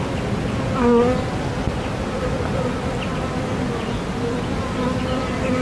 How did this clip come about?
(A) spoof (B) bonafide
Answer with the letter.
B